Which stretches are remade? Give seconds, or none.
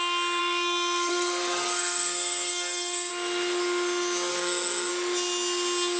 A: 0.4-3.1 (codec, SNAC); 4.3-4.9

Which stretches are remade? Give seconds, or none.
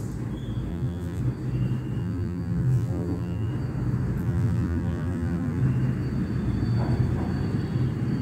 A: 0.7-1.2 (vocoder, BigVGAN v2); 2.0-3.5; 4.2-5.6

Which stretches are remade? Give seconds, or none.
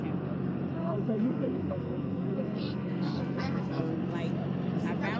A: 0.8-3.9 (codec, SNAC)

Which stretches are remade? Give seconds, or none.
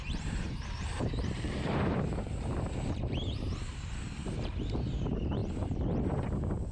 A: 0.0-5.4 (vocoder, BigVGAN v2); 6.2-6.7